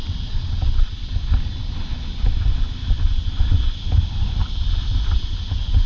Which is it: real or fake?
real